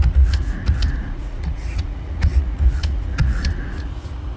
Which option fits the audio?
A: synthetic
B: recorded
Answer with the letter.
A